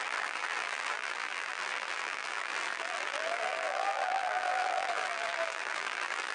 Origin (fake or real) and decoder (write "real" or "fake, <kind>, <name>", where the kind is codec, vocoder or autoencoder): fake, vocoder, BigVGAN v2